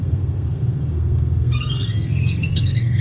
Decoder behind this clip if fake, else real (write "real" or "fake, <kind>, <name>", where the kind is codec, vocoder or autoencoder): fake, codec, SNAC